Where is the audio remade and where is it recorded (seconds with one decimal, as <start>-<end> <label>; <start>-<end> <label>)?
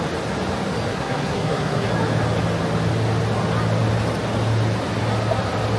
0.0-0.9 recorded; 0.9-1.9 remade; 1.9-5.8 recorded